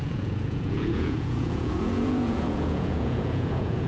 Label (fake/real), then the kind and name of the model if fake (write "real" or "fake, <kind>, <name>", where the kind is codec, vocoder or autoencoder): fake, vocoder, Vocos